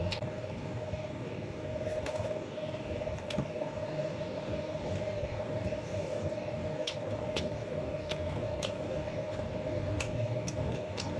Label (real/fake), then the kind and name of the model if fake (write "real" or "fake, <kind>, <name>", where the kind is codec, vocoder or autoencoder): fake, codec, DAC